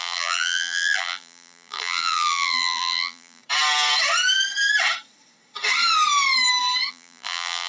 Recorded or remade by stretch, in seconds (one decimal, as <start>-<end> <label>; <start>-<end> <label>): 0.0-3.4 remade; 3.4-6.9 recorded; 6.9-7.7 remade